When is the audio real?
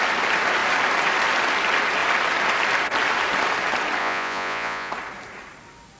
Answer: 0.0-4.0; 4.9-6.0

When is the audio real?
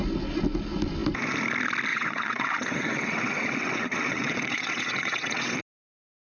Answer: 0.0-1.9; 5.6-6.2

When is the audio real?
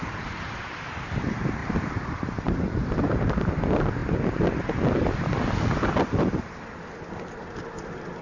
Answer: 0.0-1.6; 3.6-8.2